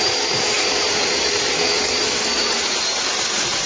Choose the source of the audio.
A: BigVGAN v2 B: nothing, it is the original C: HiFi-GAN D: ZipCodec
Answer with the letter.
A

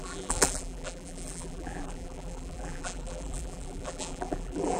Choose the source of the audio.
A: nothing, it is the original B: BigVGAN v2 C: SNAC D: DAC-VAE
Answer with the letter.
B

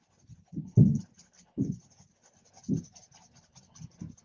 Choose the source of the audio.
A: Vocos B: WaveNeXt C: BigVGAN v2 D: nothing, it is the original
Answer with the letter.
D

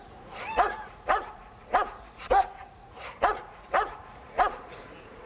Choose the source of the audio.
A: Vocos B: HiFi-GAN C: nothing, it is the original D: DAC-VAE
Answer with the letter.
A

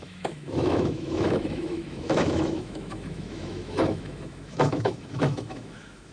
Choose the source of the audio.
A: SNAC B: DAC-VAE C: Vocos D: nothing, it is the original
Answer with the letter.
B